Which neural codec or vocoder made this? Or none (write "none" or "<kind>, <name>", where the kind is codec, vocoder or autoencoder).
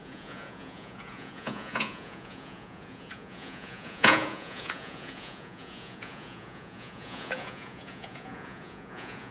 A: vocoder, Vocos